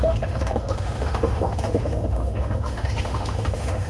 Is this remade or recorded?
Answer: remade